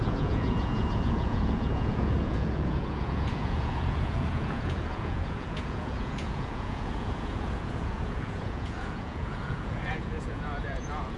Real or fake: fake